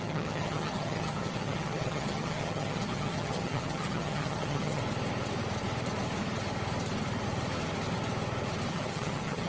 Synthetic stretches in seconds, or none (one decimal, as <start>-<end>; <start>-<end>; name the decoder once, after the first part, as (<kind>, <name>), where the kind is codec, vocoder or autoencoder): 0.0-4.8 (vocoder, HiFi-GAN); 8.7-9.5